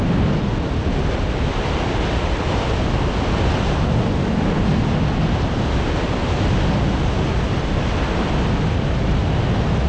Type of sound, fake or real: real